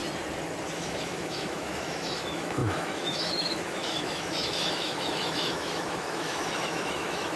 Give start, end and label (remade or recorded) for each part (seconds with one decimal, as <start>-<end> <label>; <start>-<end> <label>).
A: 0.0-0.7 recorded; 0.7-7.4 remade